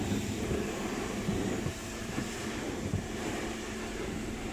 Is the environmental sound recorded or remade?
remade